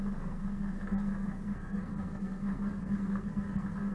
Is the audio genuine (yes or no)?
no